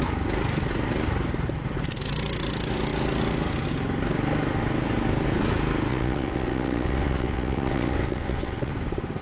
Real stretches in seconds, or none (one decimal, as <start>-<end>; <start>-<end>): 0.0-5.9; 8.7-9.2